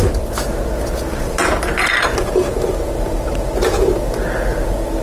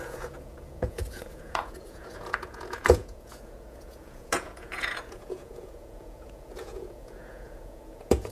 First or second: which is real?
first